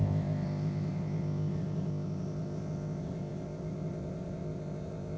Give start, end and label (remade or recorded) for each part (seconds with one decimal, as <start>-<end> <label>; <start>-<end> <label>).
0.0-5.2 remade